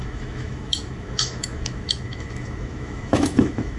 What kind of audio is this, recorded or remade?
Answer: remade